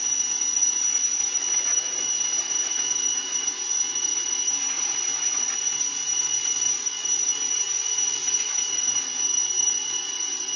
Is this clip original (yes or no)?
no